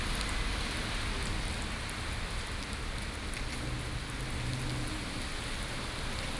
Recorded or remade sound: recorded